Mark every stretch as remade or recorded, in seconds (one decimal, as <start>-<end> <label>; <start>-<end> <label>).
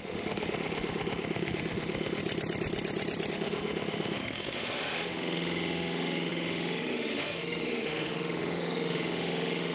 0.0-2.2 remade; 2.2-3.3 recorded; 3.3-9.7 remade